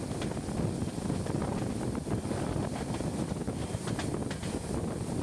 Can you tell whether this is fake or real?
real